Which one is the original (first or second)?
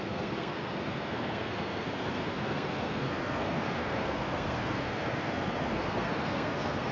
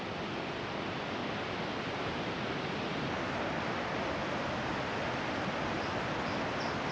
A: second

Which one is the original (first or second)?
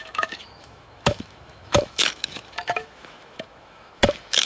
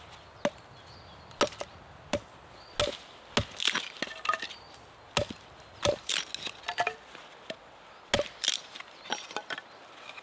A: second